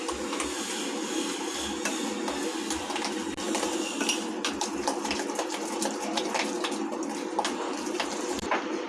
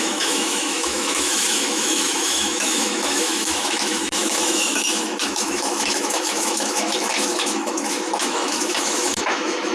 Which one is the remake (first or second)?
second